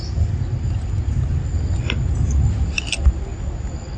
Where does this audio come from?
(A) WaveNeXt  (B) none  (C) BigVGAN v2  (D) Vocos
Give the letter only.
B